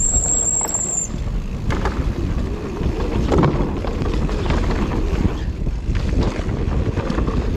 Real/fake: real